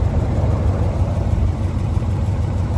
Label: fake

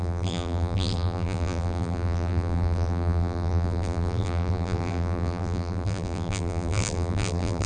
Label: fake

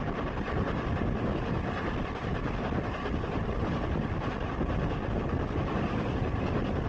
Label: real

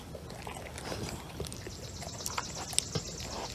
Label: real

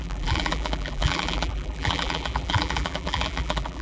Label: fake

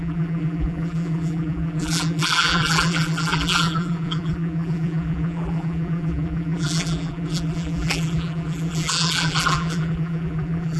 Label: fake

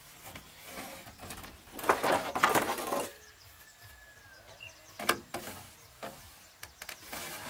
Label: real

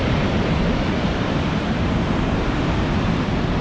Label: fake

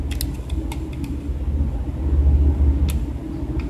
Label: real